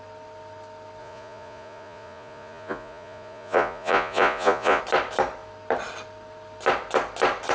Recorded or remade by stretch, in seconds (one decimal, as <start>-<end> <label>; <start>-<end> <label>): 0.0-1.0 recorded; 1.0-4.8 remade; 4.8-7.5 recorded